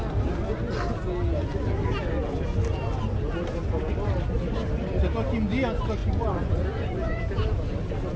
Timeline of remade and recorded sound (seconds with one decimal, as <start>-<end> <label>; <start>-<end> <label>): 0.0-6.0 recorded; 6.0-7.2 remade; 7.2-8.2 recorded

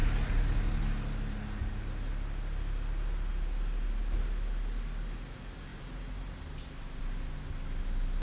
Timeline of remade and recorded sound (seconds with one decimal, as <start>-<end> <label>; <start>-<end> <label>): 0.0-8.2 recorded

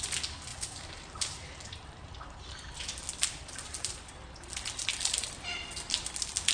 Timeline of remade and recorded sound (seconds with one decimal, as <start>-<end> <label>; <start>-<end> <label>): 0.0-0.5 recorded; 0.5-2.8 remade; 2.8-3.4 recorded; 3.4-4.1 remade; 4.1-6.5 recorded

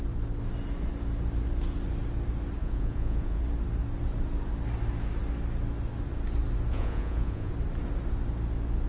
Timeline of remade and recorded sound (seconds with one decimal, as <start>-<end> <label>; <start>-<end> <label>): 0.0-2.6 recorded; 2.6-3.4 remade; 3.4-6.7 recorded; 6.7-7.5 remade; 7.5-8.9 recorded

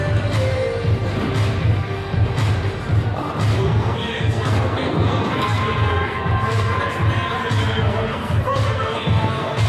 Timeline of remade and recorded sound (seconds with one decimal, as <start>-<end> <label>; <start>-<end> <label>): 0.0-1.8 recorded; 1.8-2.3 remade; 2.3-3.5 recorded; 3.5-6.8 remade; 6.8-7.6 recorded; 7.6-9.7 remade